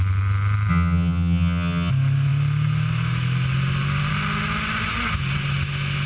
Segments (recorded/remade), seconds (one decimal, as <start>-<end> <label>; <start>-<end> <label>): 0.0-0.7 recorded; 0.7-1.9 remade; 1.9-6.1 recorded

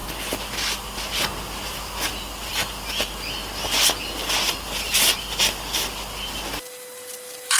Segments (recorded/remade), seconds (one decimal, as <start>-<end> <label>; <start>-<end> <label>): 0.0-7.6 recorded

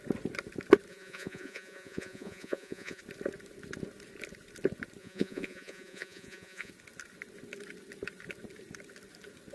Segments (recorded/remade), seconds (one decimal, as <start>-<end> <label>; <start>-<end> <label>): 0.0-0.9 recorded; 0.9-3.0 remade; 3.0-5.0 recorded; 5.0-6.7 remade; 6.7-9.5 recorded

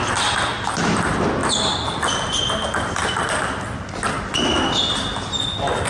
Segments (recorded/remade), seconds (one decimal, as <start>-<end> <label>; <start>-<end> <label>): 0.0-5.9 recorded

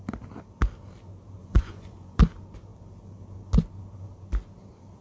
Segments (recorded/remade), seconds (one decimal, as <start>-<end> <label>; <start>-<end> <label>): 0.0-1.4 recorded; 1.4-2.2 remade; 2.2-5.0 recorded